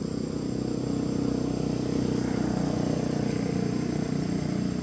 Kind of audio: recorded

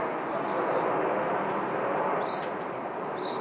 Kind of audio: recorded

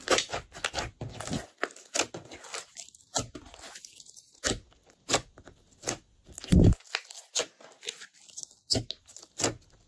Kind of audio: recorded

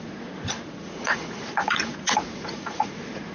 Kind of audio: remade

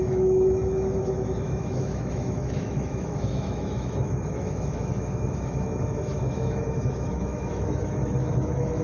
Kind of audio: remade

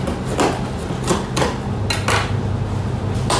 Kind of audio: recorded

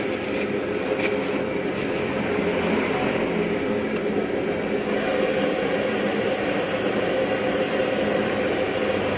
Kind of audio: recorded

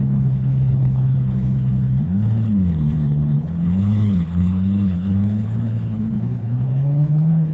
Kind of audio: remade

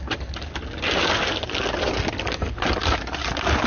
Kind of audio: recorded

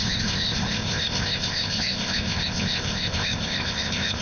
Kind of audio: remade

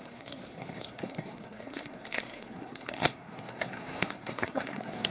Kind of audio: remade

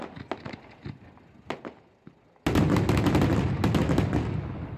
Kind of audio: recorded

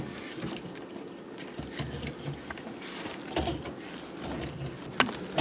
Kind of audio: recorded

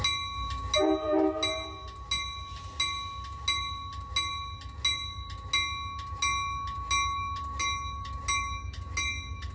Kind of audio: recorded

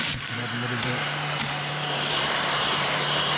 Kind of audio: remade